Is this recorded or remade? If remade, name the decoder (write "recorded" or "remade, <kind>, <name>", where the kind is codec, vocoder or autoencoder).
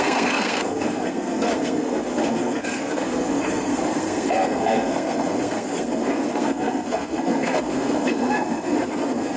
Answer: remade, codec, SNAC